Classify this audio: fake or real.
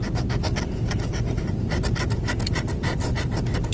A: real